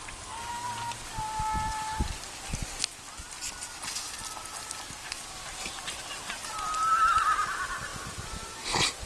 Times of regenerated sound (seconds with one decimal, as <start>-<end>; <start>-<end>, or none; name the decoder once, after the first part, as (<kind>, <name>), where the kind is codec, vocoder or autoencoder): 5.0-6.1 (vocoder, BigVGAN v2); 7.9-9.1